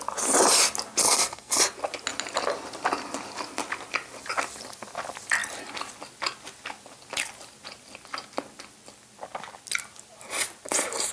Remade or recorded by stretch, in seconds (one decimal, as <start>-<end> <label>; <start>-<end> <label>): 0.0-1.0 recorded; 1.0-1.6 remade; 1.6-11.1 recorded